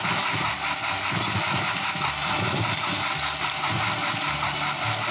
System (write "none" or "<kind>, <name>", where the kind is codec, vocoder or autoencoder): none